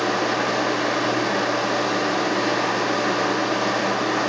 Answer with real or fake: real